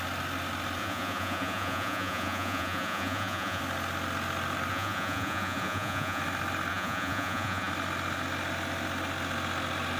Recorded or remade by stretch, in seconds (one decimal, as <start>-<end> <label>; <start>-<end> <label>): 0.0-0.8 recorded; 0.8-3.6 remade; 3.6-4.7 recorded; 4.7-6.2 remade; 6.2-6.7 recorded; 6.7-7.7 remade; 7.7-10.0 recorded